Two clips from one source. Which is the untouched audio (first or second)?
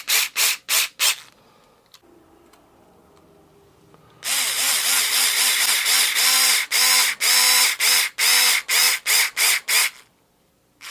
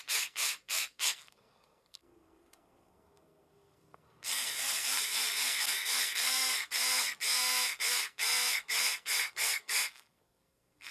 first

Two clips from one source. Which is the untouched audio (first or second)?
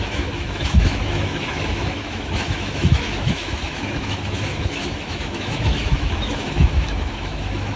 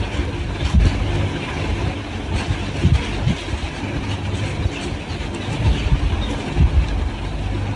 second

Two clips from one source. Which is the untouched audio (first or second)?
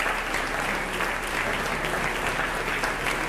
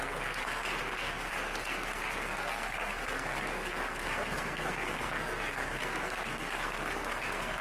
first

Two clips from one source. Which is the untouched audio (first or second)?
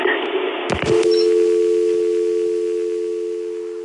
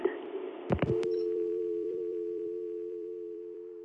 first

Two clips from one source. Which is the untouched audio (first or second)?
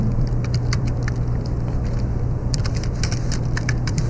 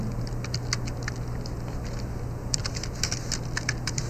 second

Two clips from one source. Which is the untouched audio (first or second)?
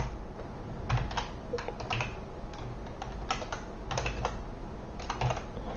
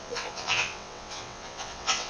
first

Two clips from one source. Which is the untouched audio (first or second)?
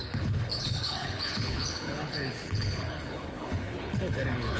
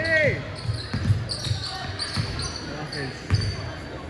second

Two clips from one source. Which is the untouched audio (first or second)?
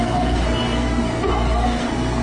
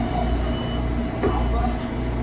second